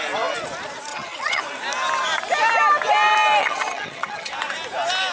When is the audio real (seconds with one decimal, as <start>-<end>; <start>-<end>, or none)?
0.0-0.9; 1.4-3.4; 4.3-5.1